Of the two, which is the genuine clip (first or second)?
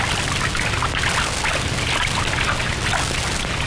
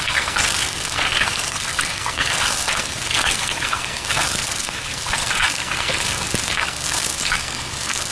first